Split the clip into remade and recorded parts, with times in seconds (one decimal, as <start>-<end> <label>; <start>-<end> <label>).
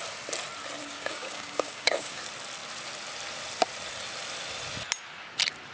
0.0-0.8 recorded; 0.8-2.2 remade; 2.2-5.7 recorded